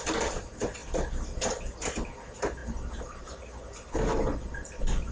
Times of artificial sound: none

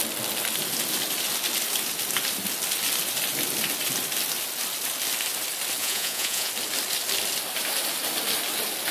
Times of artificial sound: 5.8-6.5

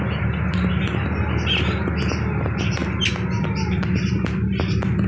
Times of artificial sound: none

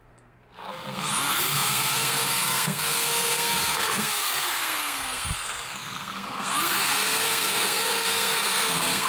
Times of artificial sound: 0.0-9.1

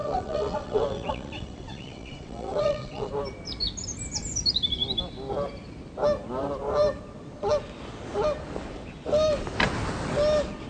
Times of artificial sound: 0.0-3.1

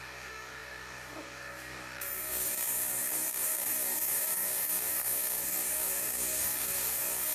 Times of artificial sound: 0.0-7.3

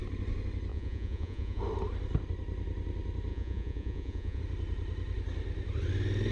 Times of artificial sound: 0.7-1.6; 3.3-4.4

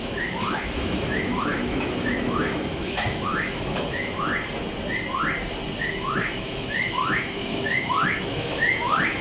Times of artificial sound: 0.0-4.3; 5.8-9.2